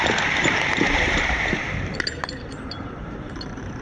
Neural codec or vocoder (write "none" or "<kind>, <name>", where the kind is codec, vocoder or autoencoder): vocoder, BigVGAN v2